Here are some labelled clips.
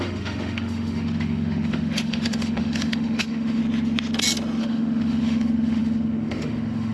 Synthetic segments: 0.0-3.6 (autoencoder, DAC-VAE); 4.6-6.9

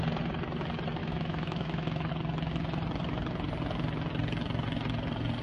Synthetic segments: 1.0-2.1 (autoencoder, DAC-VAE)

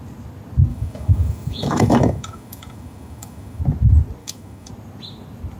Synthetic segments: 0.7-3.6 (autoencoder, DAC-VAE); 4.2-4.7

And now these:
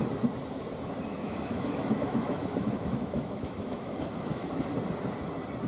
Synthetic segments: 1.1-4.5 (autoencoder, DAC-VAE)

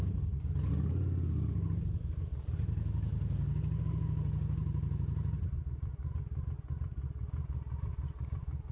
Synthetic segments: none

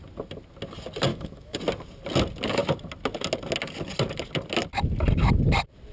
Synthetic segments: 1.1-1.6 (autoencoder, DAC-VAE)

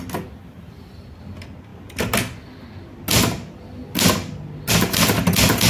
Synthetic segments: none